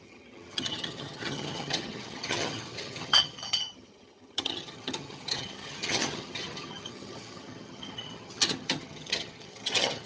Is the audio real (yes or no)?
no